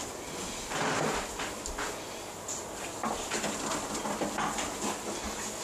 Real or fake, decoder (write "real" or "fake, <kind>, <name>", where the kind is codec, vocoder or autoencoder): real